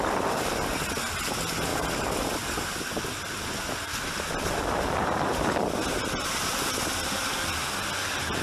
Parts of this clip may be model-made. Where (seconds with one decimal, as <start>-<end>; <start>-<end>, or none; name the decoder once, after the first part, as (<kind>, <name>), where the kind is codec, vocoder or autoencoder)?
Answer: none

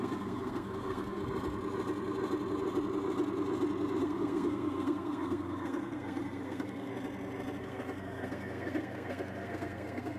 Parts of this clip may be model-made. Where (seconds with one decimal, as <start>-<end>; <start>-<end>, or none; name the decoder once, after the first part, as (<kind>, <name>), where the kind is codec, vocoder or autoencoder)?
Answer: 0.0-1.2 (codec, SNAC); 4.0-6.9; 7.6-10.2

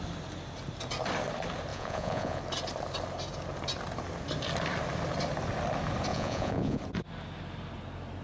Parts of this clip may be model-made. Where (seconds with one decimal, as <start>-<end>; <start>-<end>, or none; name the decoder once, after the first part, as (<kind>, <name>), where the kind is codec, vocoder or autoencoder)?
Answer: 1.7-2.4 (vocoder, Vocos); 6.1-6.8

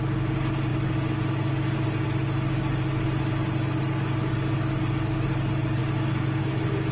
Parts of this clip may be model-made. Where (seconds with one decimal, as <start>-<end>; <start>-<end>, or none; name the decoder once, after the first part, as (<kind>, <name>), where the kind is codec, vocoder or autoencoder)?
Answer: none